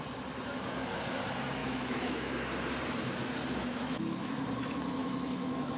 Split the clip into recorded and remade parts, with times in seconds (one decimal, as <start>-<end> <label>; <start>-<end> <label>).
0.0-1.6 recorded; 1.6-2.3 remade; 2.3-3.6 recorded; 3.6-4.3 remade; 4.3-5.0 recorded; 5.0-5.8 remade